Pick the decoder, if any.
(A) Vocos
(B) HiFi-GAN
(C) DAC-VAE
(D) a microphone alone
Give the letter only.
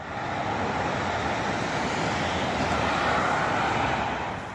D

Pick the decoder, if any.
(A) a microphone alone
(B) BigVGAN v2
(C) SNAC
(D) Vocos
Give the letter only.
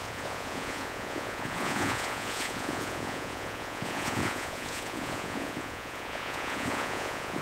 D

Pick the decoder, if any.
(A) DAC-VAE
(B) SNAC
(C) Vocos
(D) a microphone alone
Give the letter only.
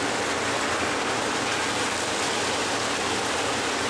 D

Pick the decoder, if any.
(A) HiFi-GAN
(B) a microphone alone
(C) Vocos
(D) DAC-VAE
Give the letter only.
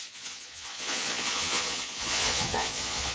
C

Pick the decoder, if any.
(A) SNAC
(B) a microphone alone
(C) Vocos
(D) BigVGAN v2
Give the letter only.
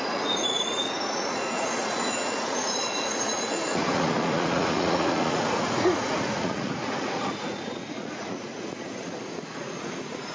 C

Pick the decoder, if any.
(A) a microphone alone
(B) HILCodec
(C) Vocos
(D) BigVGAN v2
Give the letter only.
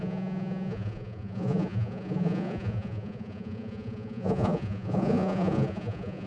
C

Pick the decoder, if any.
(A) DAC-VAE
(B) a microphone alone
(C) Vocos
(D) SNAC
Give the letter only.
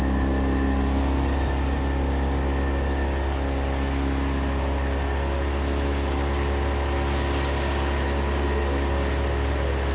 B